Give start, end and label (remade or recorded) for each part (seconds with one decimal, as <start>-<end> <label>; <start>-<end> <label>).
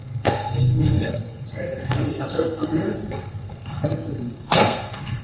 0.0-5.2 remade